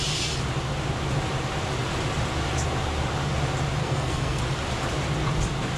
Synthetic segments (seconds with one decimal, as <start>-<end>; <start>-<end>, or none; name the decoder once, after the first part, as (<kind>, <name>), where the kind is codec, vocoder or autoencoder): 3.8-4.4 (codec, SNAC)